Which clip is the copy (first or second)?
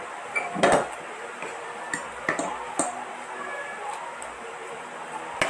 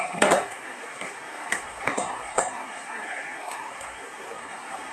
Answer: second